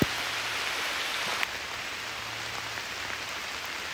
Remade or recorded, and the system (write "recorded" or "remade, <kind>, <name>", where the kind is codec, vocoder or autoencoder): recorded